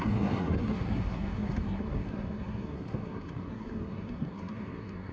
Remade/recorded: remade